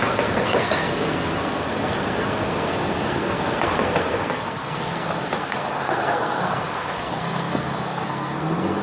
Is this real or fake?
fake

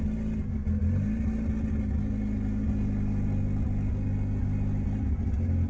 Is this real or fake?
real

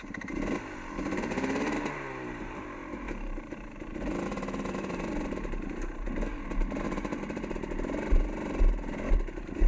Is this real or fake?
fake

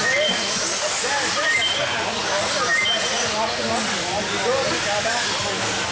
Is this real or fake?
real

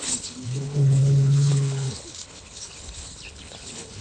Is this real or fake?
fake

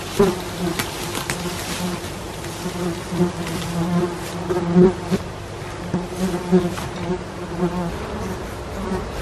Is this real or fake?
real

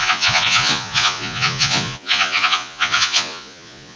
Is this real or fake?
fake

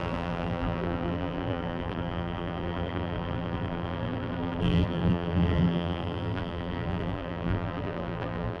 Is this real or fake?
fake